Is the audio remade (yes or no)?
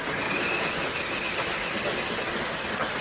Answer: no